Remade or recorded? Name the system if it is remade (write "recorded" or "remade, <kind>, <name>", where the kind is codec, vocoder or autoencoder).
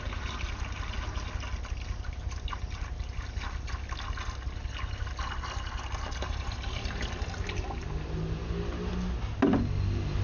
recorded